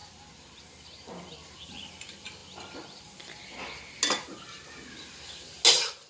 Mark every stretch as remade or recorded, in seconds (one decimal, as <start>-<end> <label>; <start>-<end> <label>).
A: 0.0-6.1 recorded